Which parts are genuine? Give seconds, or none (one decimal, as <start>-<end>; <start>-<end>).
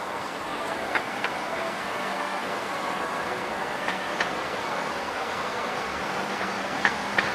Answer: none